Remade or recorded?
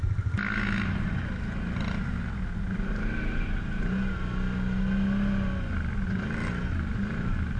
recorded